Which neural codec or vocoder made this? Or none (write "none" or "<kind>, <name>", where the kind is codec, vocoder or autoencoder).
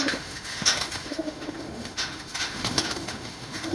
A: autoencoder, DAC-VAE